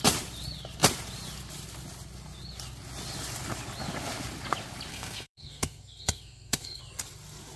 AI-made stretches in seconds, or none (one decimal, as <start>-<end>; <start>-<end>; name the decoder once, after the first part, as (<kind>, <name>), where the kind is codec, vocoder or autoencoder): 4.9-6.8 (codec, SNAC)